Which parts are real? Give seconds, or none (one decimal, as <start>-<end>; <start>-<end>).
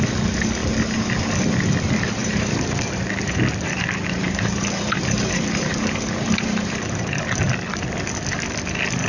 0.0-2.2; 7.4-9.1